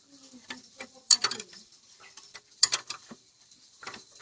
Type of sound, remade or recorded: remade